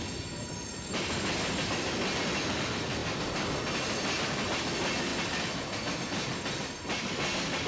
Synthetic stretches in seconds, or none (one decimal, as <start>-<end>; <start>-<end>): none